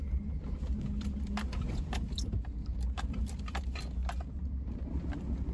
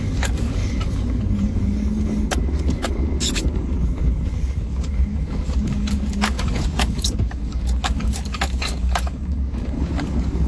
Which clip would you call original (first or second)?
first